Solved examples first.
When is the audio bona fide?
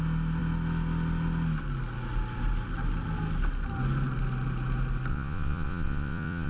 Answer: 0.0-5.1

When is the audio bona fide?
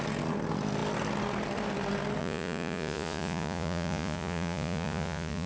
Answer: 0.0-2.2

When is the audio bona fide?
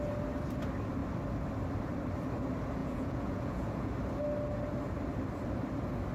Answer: 0.0-2.8; 3.9-6.1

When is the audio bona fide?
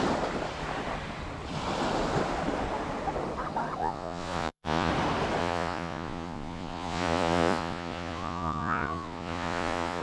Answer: 0.0-3.8; 4.9-5.4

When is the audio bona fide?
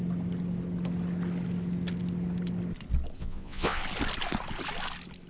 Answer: 0.0-3.2; 3.8-5.3